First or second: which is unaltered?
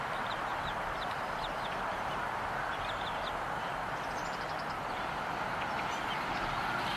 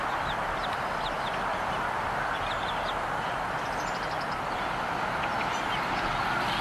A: second